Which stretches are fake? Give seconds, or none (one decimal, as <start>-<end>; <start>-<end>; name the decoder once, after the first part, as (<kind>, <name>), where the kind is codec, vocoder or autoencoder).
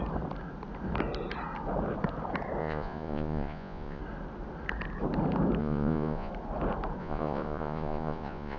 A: 2.6-4.0 (vocoder, Vocos); 5.6-6.3; 7.0-8.6